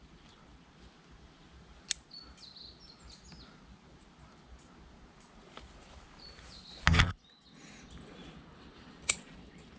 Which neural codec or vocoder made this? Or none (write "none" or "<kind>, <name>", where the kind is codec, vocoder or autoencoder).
none